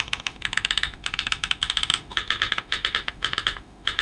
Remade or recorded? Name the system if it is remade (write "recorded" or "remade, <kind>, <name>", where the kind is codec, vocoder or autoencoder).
remade, autoencoder, DAC-VAE